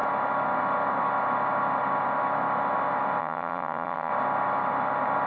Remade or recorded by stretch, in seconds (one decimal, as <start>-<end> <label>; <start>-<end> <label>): 0.0-3.2 recorded; 3.2-4.1 remade; 4.1-5.3 recorded